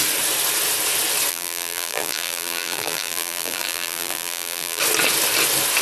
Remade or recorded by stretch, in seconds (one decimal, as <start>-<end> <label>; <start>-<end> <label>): 0.0-1.3 recorded; 1.3-4.8 remade; 4.8-5.8 recorded